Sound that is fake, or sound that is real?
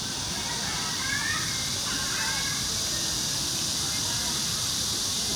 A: fake